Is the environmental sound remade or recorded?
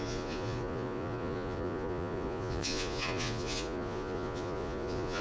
remade